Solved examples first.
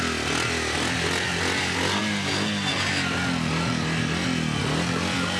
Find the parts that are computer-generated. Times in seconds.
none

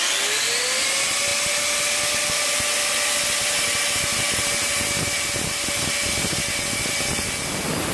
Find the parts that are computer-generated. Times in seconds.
none

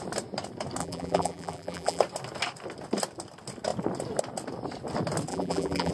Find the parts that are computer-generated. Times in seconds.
0.8-2.0 (vocoder, BigVGAN v2); 5.3-5.9

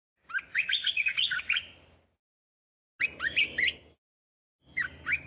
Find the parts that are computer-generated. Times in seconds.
0.5-1.3 (vocoder, Vocos)

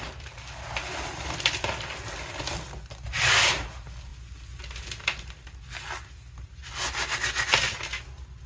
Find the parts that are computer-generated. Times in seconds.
none